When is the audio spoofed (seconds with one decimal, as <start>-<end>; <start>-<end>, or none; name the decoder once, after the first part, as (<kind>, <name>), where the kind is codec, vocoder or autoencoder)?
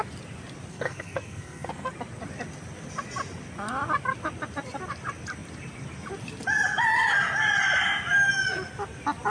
0.7-1.9 (codec, SNAC)